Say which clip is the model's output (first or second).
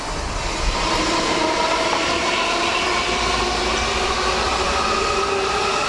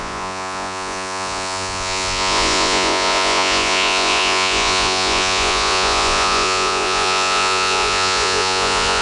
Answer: second